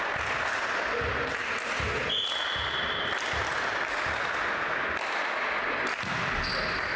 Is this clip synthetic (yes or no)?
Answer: no